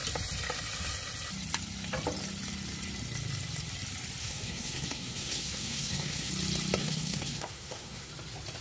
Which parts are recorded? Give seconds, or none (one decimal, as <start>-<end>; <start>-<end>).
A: 0.0-4.2; 6.3-6.8; 8.1-8.6